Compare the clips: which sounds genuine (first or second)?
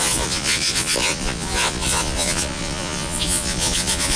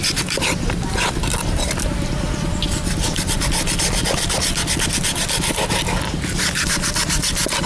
second